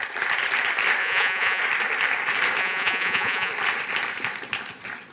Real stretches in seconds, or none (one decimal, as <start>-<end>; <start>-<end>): 0.0-1.0; 1.6-2.6; 3.5-5.1